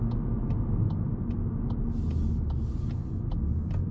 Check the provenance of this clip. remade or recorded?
recorded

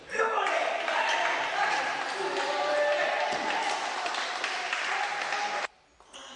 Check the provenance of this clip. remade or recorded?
recorded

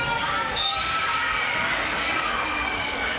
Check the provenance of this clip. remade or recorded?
remade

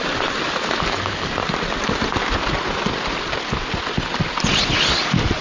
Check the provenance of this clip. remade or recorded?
recorded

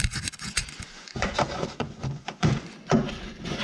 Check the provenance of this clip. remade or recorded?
remade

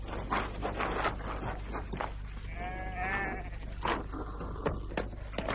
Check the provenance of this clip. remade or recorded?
recorded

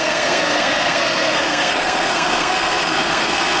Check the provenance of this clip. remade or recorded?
remade